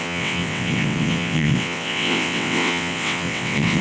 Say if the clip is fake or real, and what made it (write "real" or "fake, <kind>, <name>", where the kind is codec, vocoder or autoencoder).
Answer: fake, vocoder, WaveNeXt